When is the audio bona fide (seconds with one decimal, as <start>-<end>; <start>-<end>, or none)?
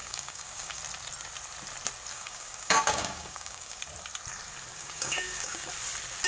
0.8-2.1; 3.8-4.7; 5.7-6.3